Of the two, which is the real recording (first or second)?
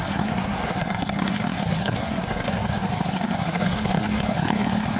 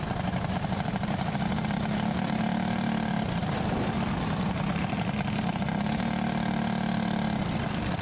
second